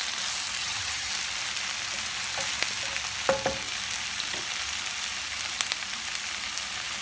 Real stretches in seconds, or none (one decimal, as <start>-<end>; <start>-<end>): 0.0-0.6; 1.1-7.0